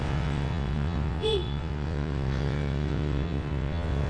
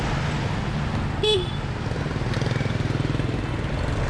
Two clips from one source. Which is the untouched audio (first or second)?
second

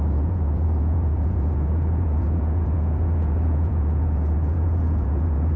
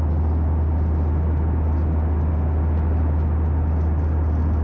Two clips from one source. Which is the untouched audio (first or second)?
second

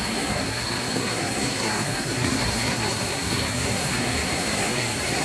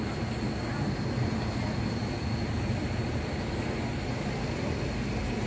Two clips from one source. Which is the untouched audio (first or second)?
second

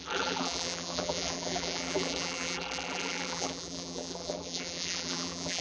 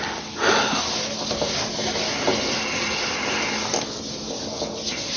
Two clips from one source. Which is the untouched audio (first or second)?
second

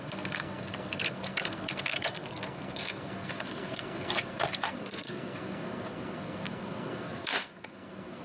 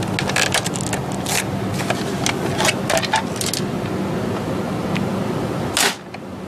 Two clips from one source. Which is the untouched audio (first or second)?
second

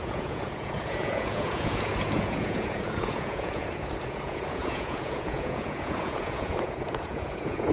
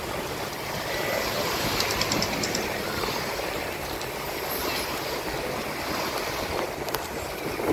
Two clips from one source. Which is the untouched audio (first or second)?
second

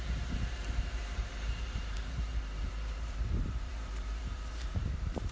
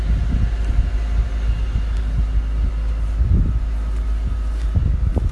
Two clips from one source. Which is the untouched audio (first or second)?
second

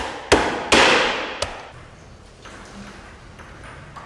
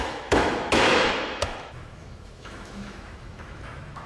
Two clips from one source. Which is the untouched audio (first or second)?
first